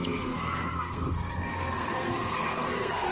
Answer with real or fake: fake